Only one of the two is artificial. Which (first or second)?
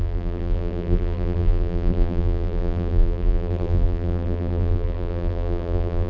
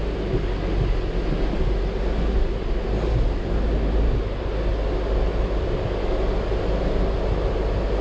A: first